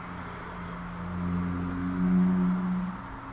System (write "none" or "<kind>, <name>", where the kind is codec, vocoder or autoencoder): none